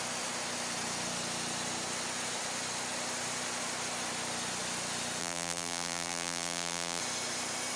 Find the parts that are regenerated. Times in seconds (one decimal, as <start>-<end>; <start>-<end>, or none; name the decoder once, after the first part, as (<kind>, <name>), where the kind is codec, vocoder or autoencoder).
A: 5.2-7.0 (vocoder, BigVGAN v2)